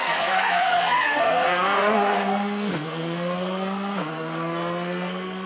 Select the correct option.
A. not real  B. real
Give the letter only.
A